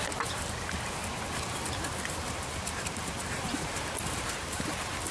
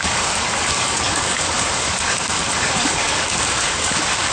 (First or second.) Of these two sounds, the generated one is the second